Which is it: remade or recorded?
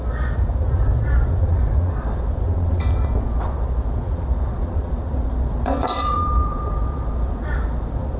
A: remade